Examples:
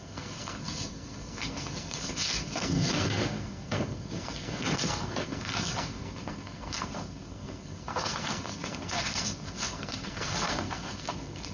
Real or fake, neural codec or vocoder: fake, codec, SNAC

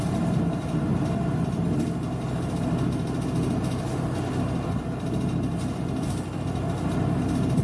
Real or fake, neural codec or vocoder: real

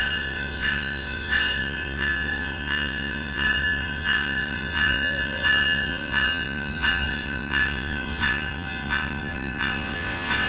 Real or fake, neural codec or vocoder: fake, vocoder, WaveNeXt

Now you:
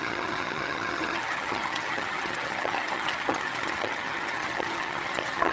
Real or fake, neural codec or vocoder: fake, vocoder, HiFi-GAN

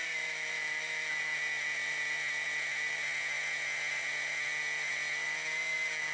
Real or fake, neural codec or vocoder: real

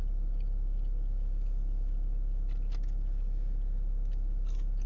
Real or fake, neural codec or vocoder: real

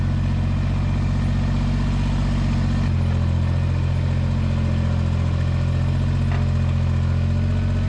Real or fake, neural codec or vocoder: real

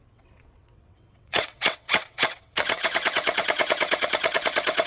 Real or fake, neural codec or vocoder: fake, vocoder, WaveNeXt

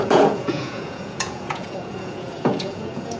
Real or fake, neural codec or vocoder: fake, vocoder, Vocos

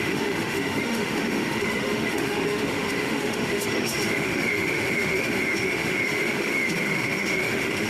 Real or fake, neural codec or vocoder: fake, autoencoder, DAC-VAE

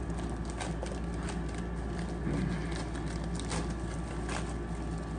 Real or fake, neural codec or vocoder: real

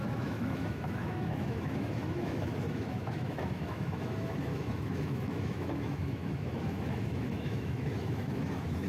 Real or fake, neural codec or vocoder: fake, autoencoder, DAC-VAE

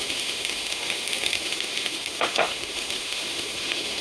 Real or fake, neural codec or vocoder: fake, autoencoder, DAC-VAE